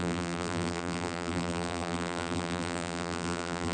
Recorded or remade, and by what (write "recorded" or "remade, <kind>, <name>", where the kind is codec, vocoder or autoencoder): remade, vocoder, BigVGAN v2